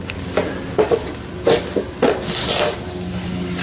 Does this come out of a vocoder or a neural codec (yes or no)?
no